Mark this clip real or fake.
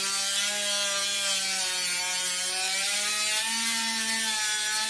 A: real